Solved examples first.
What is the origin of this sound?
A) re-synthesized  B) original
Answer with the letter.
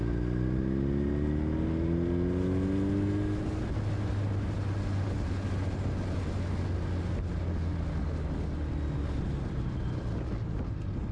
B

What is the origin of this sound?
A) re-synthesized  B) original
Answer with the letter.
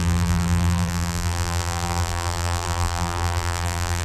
A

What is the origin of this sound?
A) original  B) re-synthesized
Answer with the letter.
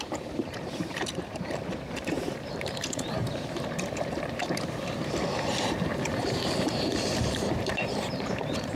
B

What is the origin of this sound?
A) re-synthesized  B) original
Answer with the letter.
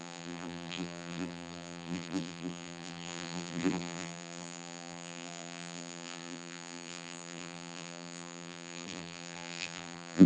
A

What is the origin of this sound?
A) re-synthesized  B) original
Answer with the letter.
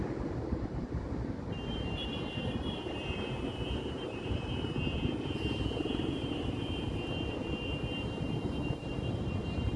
A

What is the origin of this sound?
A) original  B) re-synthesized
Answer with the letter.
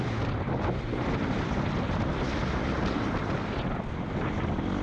A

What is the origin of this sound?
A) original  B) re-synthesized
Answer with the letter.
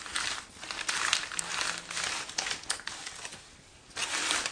A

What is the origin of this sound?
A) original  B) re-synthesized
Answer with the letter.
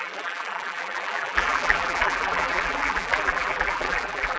B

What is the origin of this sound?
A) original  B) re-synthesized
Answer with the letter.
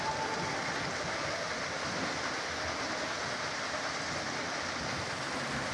A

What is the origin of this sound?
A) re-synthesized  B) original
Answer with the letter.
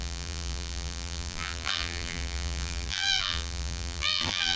A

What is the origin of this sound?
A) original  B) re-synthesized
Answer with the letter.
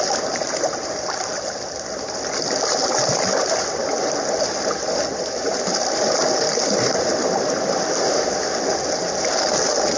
A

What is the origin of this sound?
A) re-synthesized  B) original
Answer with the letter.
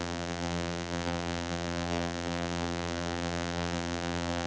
A